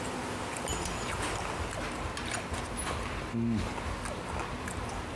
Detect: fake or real real